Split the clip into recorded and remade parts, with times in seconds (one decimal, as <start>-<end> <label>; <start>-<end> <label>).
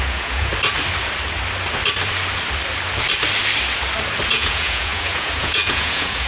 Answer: 0.0-0.5 remade; 0.5-4.3 recorded; 4.3-6.3 remade